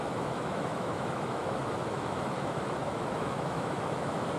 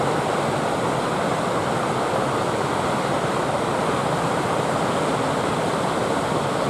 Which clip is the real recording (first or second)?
second